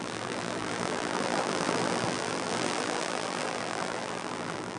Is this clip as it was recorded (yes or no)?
no